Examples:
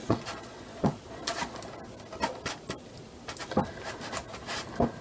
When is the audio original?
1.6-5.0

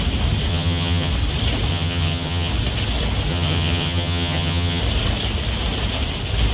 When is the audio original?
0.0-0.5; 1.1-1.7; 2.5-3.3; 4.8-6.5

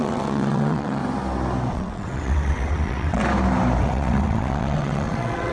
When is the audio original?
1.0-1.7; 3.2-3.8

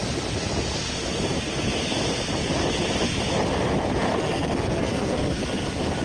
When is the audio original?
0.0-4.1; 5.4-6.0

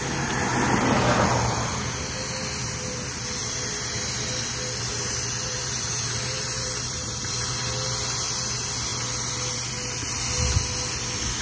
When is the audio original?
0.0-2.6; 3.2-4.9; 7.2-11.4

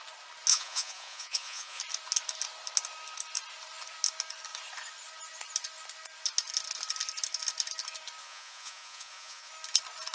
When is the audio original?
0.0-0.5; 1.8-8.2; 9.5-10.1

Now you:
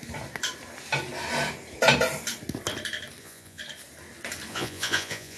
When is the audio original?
0.0-3.2; 3.6-4.5

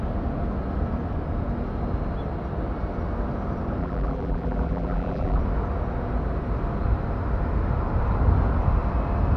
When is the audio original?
0.0-3.8; 5.4-9.4